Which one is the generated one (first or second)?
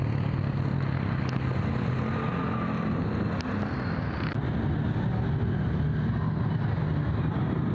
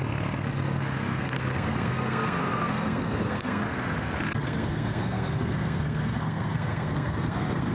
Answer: second